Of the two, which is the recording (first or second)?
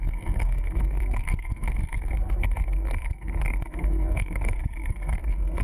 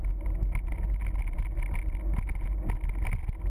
second